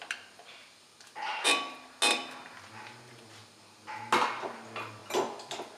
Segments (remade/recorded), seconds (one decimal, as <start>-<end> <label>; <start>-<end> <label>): 0.0-5.8 recorded